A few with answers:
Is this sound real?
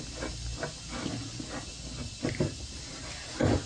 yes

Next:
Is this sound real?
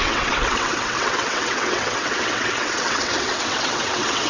no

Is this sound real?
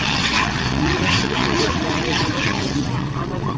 no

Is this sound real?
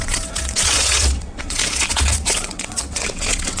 no